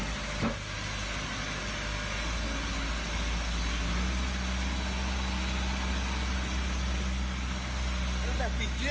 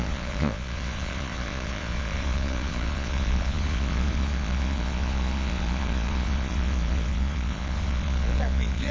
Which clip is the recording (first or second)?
first